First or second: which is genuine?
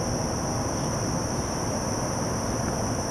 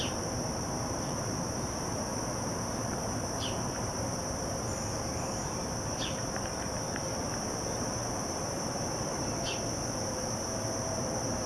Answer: first